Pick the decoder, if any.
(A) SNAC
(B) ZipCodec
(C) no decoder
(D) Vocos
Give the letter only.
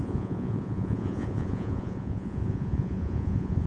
D